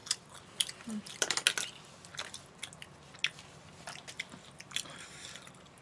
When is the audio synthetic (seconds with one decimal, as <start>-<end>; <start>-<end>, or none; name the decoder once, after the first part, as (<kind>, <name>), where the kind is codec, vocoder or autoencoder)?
none